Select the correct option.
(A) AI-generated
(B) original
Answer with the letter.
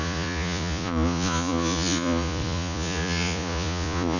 A